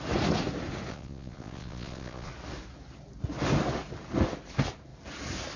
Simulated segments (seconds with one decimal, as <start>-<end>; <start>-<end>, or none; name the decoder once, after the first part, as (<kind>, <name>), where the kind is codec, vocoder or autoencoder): 0.9-2.3 (vocoder, Vocos)